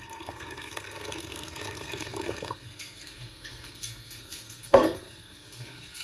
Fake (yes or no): yes